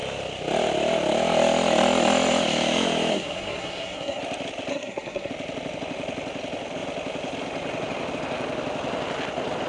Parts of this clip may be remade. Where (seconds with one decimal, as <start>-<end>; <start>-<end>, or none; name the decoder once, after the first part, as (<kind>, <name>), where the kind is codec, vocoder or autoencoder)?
3.1-4.2 (codec, SNAC); 4.7-5.3